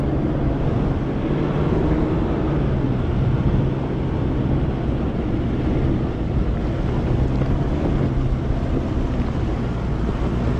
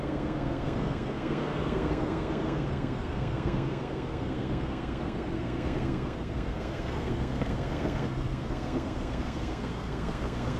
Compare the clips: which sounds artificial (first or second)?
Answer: second